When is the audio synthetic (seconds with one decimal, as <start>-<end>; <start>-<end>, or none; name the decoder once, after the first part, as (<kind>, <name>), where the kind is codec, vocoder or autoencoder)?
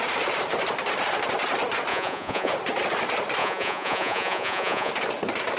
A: 1.9-2.5 (vocoder, Vocos); 3.4-4.9